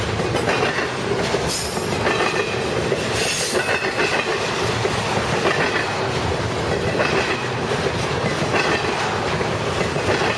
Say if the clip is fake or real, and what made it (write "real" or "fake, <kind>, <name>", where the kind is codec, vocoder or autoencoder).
real